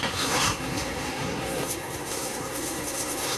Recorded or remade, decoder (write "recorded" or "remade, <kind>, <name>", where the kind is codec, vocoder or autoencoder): remade, codec, SNAC